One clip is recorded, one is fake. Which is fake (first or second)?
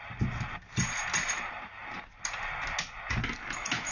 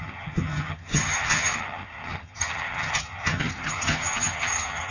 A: second